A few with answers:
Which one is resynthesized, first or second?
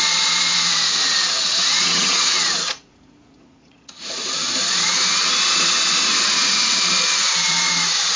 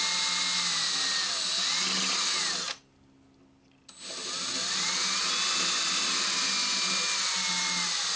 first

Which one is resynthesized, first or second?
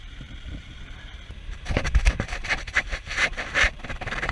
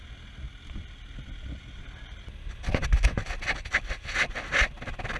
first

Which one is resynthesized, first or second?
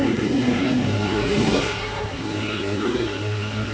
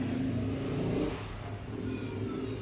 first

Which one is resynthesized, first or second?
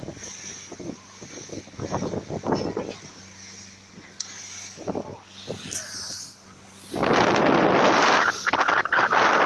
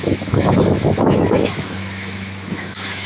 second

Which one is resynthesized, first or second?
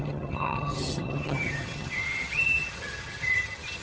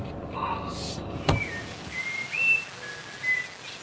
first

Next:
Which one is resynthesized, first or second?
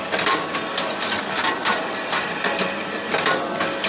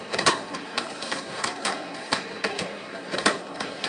second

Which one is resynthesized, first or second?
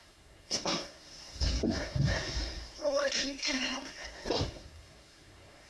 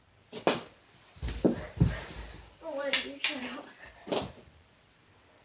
first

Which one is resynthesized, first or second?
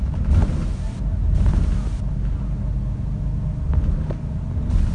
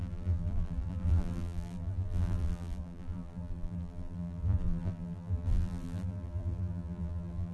second